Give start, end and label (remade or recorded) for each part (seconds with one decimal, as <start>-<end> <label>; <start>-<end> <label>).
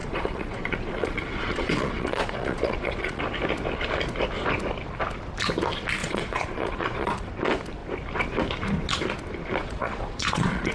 0.0-3.2 remade; 3.2-6.0 recorded; 6.0-7.3 remade; 7.3-9.6 recorded; 9.6-10.7 remade